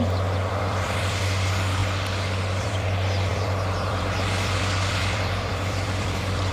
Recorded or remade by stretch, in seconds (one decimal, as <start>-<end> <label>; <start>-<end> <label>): 0.0-1.8 remade; 1.8-2.6 recorded; 2.6-6.5 remade